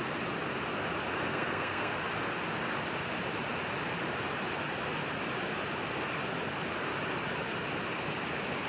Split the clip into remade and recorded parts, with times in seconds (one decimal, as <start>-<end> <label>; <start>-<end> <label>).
0.0-1.3 recorded; 1.3-2.0 remade; 2.0-8.7 recorded